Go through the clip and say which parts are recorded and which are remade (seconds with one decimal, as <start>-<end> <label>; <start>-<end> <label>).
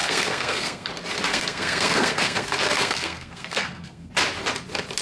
0.0-0.9 remade; 0.9-1.3 recorded; 1.3-4.1 remade; 4.1-5.0 recorded